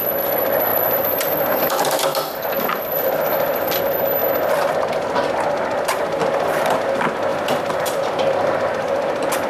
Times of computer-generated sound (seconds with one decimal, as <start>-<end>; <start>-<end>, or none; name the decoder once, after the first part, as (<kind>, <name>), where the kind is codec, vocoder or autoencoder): 0.7-3.8 (vocoder, BigVGAN v2); 7.3-8.0